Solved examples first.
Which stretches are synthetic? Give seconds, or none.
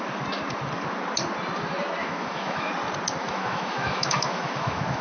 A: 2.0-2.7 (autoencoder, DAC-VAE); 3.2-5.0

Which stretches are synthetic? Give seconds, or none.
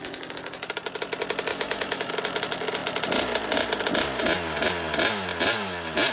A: 1.5-2.1 (autoencoder, DAC-VAE)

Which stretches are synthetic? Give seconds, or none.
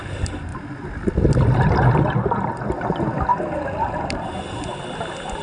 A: none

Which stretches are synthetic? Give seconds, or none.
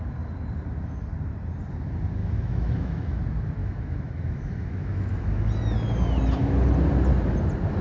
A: 2.2-3.2 (autoencoder, DAC-VAE); 3.6-5.5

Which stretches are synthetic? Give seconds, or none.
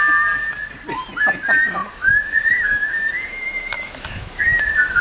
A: 1.8-5.0 (autoencoder, DAC-VAE)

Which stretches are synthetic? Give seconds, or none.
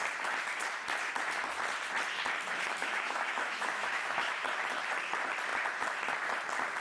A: 2.8-4.4 (autoencoder, DAC-VAE)